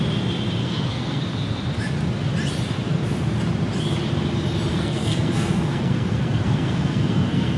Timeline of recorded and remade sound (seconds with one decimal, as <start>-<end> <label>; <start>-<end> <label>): 0.0-0.6 recorded; 0.6-1.2 remade; 1.2-4.7 recorded; 4.7-7.6 remade